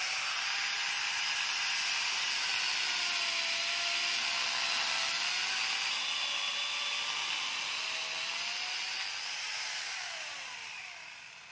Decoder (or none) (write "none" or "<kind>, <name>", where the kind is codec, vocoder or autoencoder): none